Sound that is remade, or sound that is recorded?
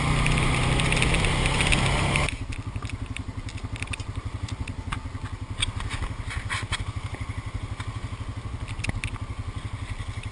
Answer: recorded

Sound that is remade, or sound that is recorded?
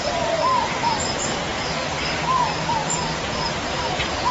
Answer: remade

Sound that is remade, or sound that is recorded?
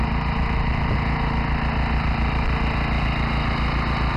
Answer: recorded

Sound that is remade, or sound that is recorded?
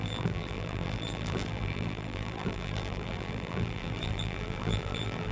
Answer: remade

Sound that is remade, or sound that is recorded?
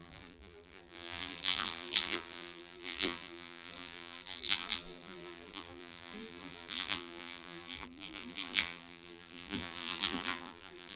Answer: remade